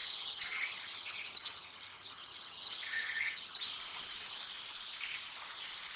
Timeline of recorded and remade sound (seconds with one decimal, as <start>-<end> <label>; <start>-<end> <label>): 0.0-3.6 remade; 3.6-6.0 recorded